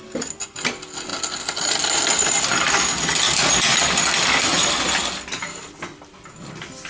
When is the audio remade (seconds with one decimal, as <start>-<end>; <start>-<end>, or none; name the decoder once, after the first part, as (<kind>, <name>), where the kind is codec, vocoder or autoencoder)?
none